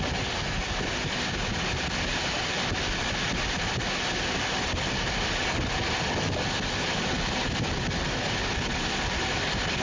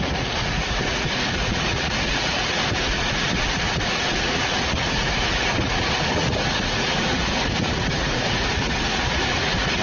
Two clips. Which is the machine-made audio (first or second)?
second